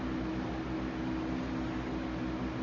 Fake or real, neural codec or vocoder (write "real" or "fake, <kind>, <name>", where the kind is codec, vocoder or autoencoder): real